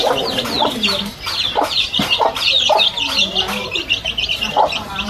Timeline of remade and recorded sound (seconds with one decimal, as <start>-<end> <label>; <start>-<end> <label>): 0.0-5.1 recorded